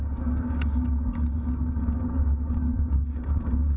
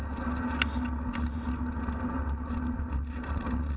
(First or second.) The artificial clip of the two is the first